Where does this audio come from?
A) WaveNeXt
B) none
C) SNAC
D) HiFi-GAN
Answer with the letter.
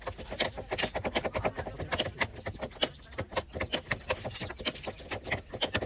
B